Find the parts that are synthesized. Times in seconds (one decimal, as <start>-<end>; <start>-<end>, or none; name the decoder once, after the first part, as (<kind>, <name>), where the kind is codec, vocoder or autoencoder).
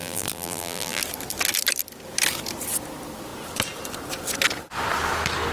0.0-1.0 (vocoder, BigVGAN v2)